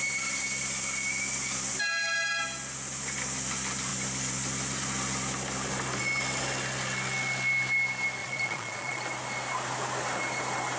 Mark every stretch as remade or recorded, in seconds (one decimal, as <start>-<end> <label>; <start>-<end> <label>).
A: 0.0-8.2 recorded; 8.2-9.0 remade; 9.0-10.8 recorded